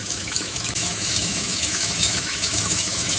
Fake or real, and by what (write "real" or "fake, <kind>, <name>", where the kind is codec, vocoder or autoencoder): fake, autoencoder, DAC-VAE